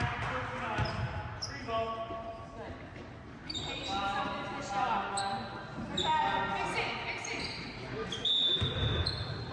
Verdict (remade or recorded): recorded